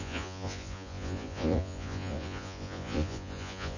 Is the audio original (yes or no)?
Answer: no